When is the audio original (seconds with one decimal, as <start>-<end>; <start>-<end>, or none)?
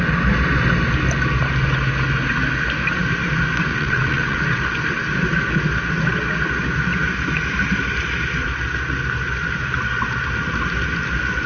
0.0-3.7; 4.4-11.5